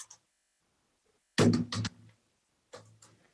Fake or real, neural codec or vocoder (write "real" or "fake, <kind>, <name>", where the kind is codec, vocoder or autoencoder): real